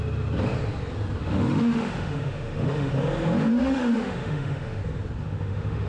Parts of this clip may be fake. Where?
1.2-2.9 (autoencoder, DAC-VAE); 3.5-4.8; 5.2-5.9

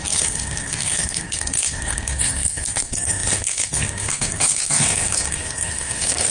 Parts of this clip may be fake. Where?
0.0-6.3 (codec, SNAC)

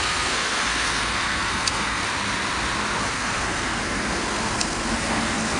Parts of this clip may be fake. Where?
0.0-2.0 (codec, SNAC); 3.1-5.6